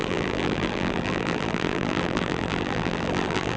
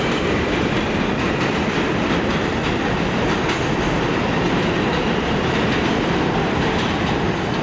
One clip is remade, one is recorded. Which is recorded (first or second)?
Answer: second